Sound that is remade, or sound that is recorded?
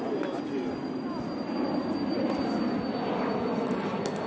recorded